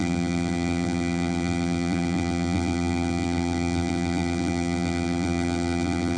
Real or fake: fake